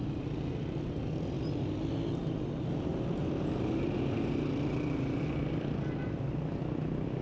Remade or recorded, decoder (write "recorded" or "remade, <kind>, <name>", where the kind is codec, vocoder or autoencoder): recorded